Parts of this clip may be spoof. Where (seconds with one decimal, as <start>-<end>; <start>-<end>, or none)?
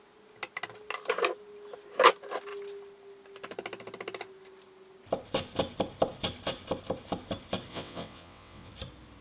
7.7-8.7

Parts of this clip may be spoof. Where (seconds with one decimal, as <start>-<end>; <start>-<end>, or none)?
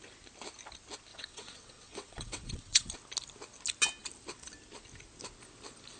1.1-2.9